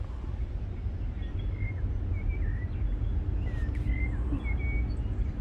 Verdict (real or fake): real